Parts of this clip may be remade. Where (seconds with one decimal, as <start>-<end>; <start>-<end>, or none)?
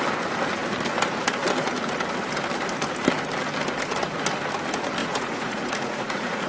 5.0-6.5